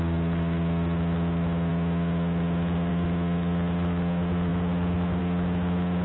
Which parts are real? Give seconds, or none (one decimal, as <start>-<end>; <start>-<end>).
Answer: 0.0-6.0